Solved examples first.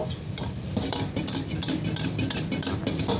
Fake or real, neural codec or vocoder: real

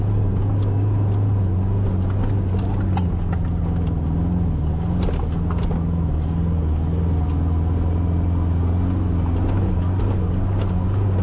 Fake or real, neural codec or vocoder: real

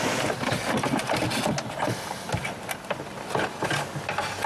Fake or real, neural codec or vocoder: real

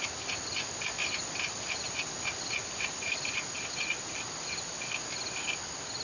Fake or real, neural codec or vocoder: real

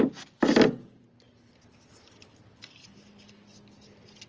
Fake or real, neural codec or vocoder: real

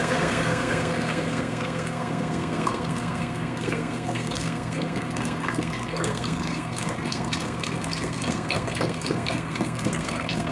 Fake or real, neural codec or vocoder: fake, codec, SNAC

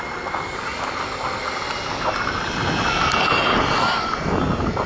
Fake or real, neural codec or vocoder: real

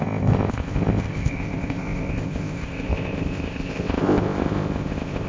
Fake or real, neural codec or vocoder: fake, codec, ZipCodec